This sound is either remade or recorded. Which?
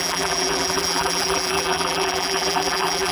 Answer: remade